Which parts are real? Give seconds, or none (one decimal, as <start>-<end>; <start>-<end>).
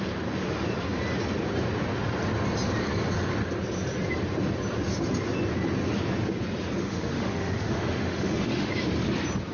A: 0.0-6.8; 8.7-9.5